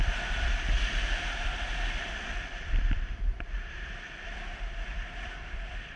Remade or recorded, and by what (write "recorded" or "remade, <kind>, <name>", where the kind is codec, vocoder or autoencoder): remade, vocoder, BigVGAN v2